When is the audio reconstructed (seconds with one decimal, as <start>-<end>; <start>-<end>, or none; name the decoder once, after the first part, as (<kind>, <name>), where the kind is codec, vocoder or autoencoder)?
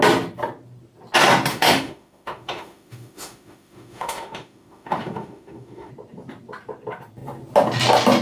1.5-5.9 (autoencoder, DAC-VAE)